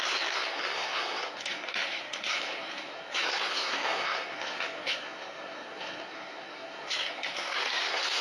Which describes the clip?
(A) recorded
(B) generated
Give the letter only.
B